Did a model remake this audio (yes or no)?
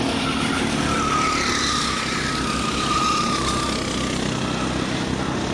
no